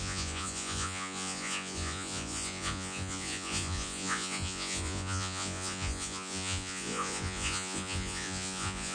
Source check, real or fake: fake